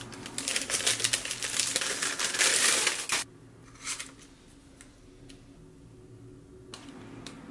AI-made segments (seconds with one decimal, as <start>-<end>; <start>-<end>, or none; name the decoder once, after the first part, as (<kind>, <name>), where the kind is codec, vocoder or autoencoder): none

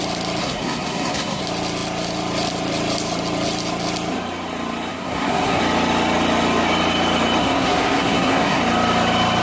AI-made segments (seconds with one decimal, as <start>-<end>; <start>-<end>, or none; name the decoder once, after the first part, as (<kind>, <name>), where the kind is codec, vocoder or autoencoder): 0.4-1.4 (codec, SNAC); 4.9-5.6; 7.4-8.6

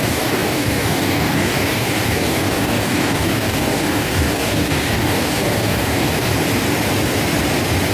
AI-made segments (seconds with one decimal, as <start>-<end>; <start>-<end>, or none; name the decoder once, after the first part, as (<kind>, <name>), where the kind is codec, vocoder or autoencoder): 0.0-6.3 (codec, DAC)

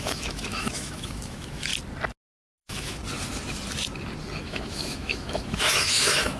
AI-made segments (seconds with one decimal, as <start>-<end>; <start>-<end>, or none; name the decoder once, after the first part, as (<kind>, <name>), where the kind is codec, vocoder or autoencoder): 0.0-1.7 (autoencoder, DAC-VAE); 2.3-3.0; 4.4-6.4

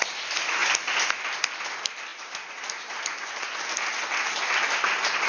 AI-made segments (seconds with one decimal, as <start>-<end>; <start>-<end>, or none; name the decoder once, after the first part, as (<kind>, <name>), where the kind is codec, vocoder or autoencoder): none